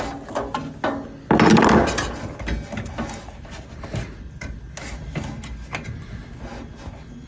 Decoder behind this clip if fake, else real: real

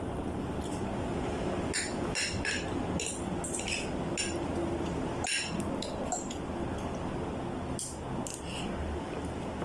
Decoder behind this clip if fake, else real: real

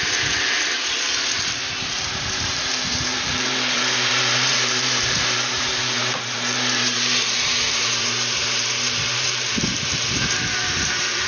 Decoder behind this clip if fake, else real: fake, vocoder, BigVGAN v2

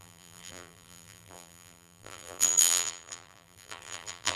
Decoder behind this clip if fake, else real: fake, vocoder, BigVGAN v2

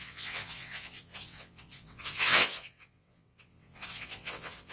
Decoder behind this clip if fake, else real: fake, vocoder, WaveNeXt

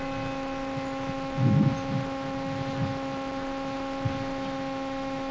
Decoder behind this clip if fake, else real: real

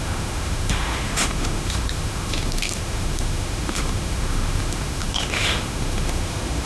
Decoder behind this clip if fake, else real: fake, autoencoder, DAC-VAE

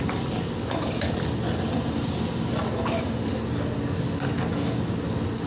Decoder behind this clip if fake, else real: real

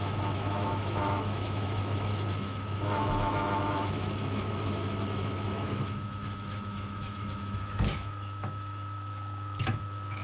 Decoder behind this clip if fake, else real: fake, autoencoder, DAC-VAE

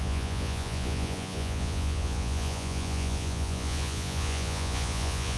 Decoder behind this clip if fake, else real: fake, vocoder, Vocos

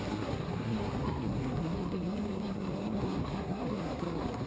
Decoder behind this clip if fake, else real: fake, codec, SNAC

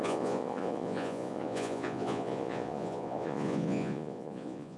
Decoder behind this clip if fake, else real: fake, vocoder, Vocos